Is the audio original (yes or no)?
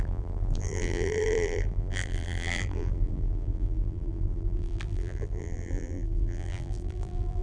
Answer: no